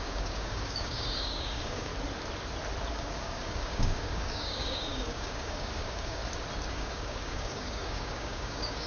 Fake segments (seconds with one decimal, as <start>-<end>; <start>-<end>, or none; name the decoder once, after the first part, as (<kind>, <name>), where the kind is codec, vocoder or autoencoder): 0.0-1.9 (codec, DAC); 2.9-6.2; 6.7-8.9